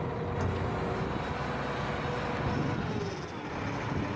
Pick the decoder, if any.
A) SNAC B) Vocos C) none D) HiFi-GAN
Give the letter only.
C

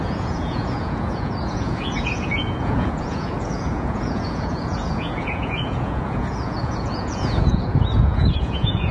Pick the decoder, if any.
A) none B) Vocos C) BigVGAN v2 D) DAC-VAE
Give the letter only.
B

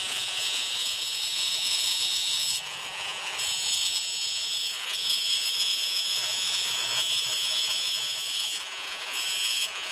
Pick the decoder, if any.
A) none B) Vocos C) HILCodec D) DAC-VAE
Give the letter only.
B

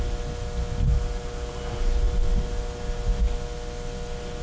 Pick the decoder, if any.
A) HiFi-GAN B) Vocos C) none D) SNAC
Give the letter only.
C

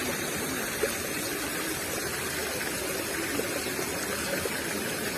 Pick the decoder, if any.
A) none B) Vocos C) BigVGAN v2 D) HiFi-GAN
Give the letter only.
A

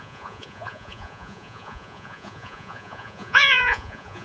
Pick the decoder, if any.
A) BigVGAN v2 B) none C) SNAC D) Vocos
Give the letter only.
D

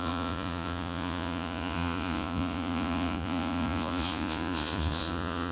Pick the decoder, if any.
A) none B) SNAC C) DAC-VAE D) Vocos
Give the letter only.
D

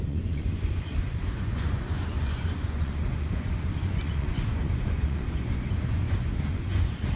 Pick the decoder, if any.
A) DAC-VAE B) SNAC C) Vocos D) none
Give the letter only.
C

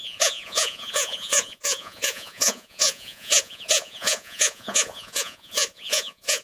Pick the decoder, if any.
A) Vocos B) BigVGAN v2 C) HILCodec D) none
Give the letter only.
A